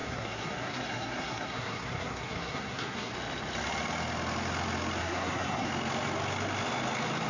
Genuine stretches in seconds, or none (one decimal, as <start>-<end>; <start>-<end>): 3.1-5.0; 5.7-7.3